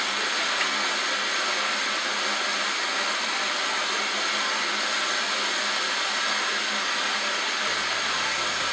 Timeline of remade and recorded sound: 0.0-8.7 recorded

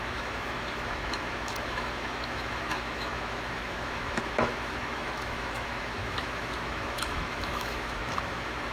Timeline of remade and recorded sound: 0.0-8.7 remade

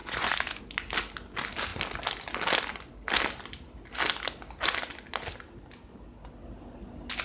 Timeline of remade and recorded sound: 0.0-0.6 remade; 0.6-7.2 recorded

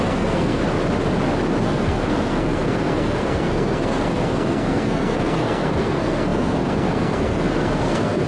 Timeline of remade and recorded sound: 0.0-0.6 remade; 0.6-1.6 recorded; 1.6-8.3 remade

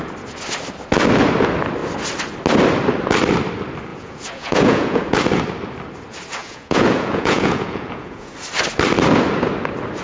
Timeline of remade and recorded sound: 0.0-3.9 recorded; 3.9-5.0 remade; 5.0-6.4 recorded; 6.4-8.3 remade; 8.3-10.0 recorded